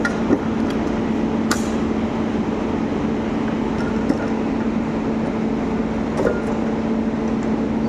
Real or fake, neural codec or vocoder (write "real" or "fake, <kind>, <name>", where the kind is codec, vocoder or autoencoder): real